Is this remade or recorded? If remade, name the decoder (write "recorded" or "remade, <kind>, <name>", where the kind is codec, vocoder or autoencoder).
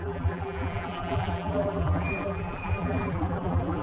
remade, vocoder, BigVGAN v2